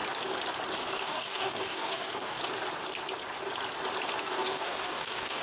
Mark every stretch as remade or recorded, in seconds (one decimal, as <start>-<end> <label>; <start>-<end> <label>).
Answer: 0.0-0.9 recorded; 0.9-2.4 remade; 2.4-4.2 recorded; 4.2-5.4 remade